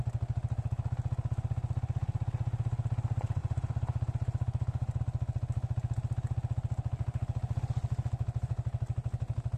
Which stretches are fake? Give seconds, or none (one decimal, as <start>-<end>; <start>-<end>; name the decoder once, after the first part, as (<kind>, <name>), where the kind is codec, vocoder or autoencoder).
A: 3.4-5.0 (vocoder, BigVGAN v2)